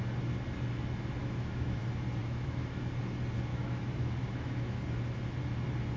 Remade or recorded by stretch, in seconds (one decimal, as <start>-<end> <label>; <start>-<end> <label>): 0.0-1.2 recorded; 1.2-1.8 remade; 1.8-2.2 recorded; 2.2-2.8 remade; 2.8-3.5 recorded; 3.5-4.8 remade; 4.8-6.0 recorded